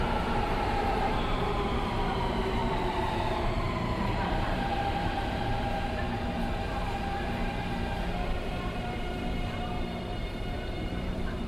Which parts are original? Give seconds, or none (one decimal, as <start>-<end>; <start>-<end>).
5.5-8.3